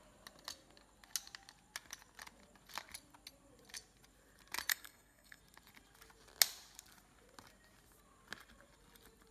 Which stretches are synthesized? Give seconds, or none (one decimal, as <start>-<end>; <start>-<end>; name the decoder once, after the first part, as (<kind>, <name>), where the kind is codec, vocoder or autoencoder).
4.7-5.4 (codec, SNAC)